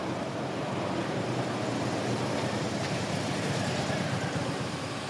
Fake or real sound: fake